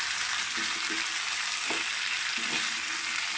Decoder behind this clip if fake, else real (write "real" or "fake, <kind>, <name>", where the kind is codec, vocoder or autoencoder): real